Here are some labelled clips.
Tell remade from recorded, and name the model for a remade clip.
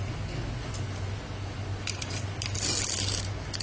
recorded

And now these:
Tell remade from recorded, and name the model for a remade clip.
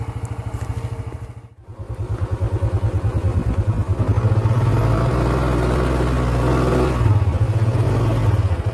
recorded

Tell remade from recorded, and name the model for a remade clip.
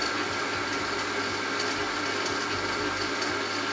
recorded